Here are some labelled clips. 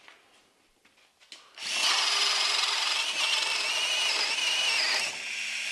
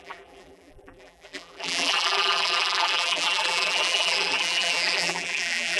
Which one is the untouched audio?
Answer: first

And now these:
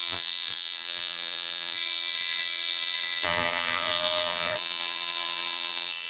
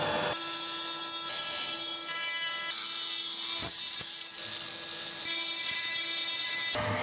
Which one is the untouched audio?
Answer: second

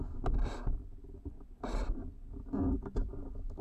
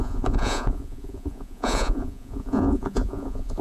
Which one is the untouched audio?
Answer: first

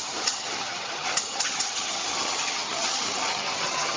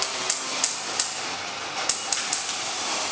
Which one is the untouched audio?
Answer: second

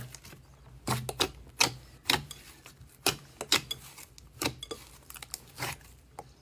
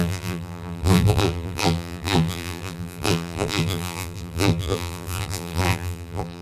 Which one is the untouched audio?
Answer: first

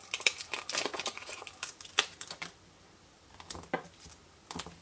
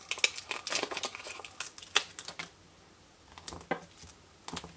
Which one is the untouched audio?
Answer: second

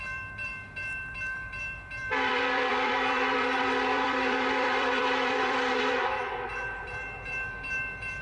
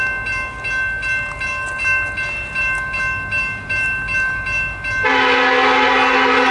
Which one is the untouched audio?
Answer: second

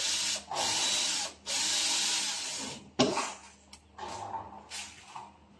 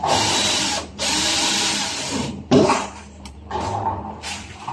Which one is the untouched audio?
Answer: first